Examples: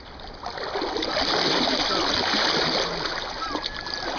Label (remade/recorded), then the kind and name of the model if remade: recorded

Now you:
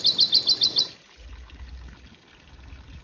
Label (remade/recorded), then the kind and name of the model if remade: recorded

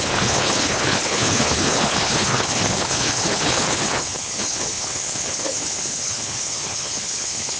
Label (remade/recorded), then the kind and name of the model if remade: remade, codec, HILCodec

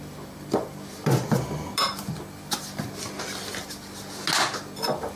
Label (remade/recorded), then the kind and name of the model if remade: recorded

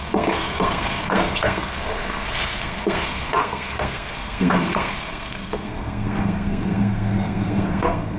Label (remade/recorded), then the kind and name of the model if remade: remade, codec, SNAC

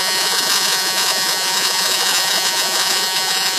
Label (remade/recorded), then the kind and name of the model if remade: remade, vocoder, Vocos